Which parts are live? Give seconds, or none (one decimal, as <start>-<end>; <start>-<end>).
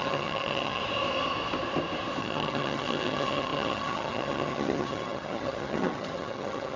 0.8-2.2